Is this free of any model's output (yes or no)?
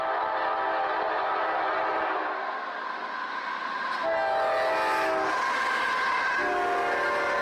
yes